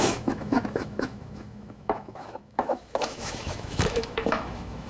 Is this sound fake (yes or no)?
yes